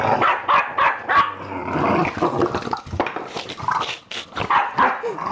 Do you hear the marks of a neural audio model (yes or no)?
no